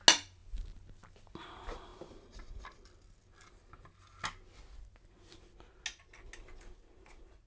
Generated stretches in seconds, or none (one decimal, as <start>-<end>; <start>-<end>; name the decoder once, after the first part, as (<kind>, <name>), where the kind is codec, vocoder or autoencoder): none